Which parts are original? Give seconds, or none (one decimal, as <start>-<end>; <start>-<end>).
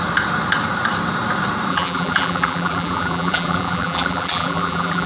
0.0-1.7